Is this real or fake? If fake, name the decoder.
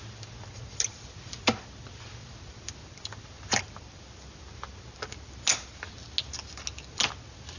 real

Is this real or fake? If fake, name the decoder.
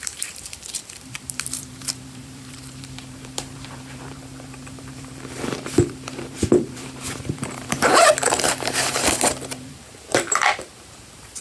fake, vocoder, BigVGAN v2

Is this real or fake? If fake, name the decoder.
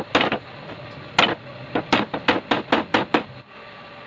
real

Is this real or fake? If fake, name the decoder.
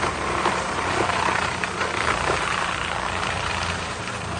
fake, vocoder, BigVGAN v2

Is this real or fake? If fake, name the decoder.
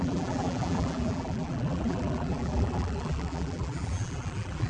fake, vocoder, BigVGAN v2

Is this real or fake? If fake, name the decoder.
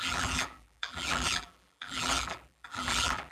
fake, vocoder, BigVGAN v2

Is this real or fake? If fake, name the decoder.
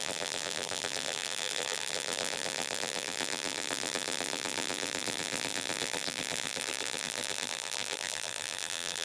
fake, vocoder, BigVGAN v2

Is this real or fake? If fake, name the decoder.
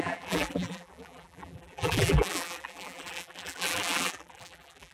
fake, vocoder, BigVGAN v2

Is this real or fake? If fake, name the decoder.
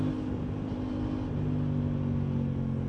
real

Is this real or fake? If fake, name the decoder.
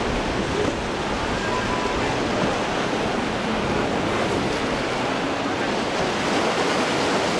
real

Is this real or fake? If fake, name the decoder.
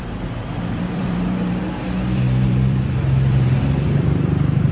fake, vocoder, BigVGAN v2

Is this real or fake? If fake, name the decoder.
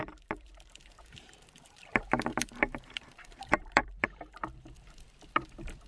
fake, vocoder, BigVGAN v2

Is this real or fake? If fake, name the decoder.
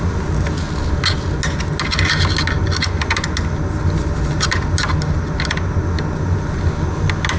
real